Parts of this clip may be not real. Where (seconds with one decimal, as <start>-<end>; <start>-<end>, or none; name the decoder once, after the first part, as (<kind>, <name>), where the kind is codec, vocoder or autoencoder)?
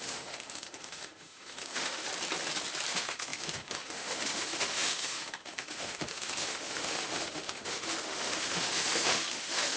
0.0-2.1 (autoencoder, DAC-VAE); 2.9-9.8